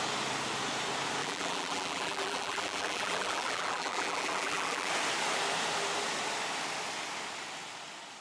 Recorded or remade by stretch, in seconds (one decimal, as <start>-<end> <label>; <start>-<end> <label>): 0.0-1.2 recorded; 1.2-4.9 remade; 4.9-8.2 recorded